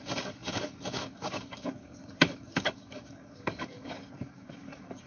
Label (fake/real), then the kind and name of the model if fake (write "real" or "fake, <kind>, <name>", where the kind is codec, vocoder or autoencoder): fake, codec, DAC